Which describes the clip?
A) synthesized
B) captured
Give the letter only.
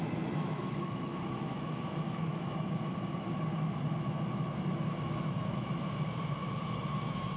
A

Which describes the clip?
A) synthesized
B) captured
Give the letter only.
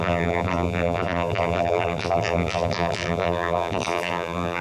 A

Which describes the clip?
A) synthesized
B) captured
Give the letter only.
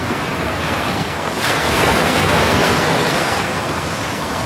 A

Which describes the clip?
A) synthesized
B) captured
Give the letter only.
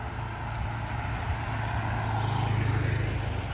B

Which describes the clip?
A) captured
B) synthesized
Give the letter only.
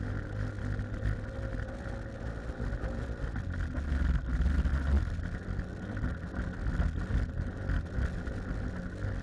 A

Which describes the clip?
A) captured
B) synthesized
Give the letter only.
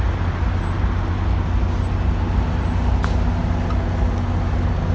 A